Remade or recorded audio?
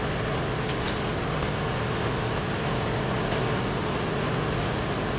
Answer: recorded